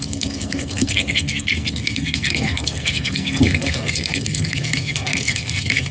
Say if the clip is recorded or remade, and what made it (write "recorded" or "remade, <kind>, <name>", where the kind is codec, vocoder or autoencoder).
remade, codec, SNAC